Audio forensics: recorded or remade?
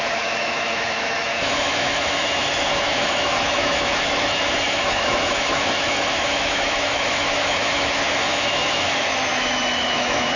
remade